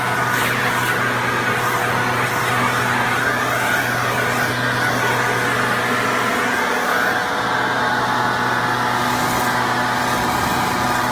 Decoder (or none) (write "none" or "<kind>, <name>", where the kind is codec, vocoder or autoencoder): none